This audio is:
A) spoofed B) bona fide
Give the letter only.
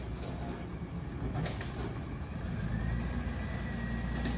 B